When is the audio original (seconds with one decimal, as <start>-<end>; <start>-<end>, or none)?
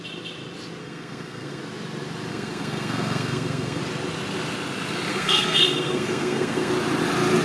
0.0-0.8; 1.6-2.3; 3.8-5.1; 6.7-7.4